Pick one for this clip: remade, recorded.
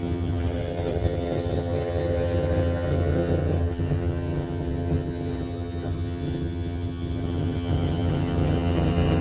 remade